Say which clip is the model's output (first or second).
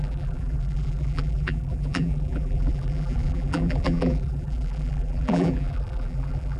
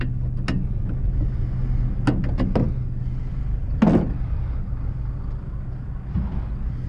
first